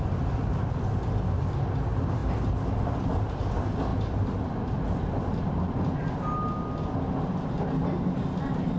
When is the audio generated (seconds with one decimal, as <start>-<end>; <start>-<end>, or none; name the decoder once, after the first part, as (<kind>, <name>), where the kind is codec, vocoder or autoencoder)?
3.9-5.4 (vocoder, BigVGAN v2)